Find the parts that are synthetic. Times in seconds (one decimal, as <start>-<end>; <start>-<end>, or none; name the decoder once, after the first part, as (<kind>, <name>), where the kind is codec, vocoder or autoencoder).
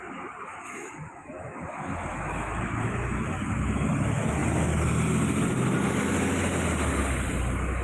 0.5-3.9 (autoencoder, DAC-VAE)